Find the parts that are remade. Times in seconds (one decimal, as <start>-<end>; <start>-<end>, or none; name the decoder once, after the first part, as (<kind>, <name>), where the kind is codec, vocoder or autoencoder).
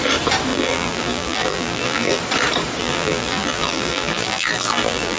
0.5-2.2 (vocoder, BigVGAN v2); 2.8-5.2